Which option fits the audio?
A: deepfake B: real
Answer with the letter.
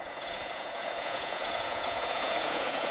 A